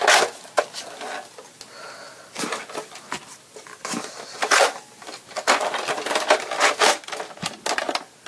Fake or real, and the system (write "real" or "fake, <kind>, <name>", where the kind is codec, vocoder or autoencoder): real